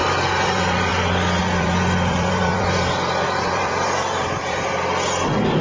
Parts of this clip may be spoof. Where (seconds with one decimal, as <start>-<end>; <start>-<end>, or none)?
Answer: 0.0-0.9; 1.4-4.7